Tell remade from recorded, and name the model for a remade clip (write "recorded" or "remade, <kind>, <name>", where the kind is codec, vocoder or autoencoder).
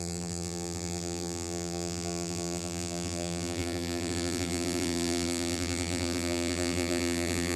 remade, vocoder, BigVGAN v2